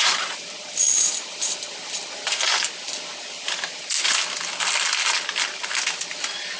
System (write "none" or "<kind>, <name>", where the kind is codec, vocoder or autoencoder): none